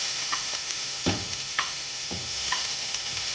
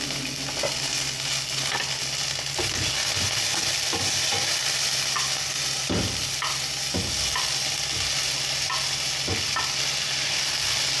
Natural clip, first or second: second